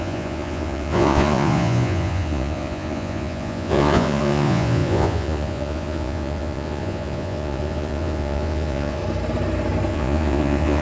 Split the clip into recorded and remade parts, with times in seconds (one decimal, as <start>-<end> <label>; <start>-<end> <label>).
0.0-9.0 remade; 9.0-9.9 recorded; 9.9-10.8 remade